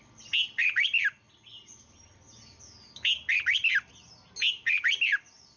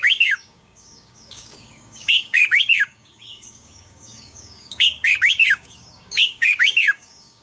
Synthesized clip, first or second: second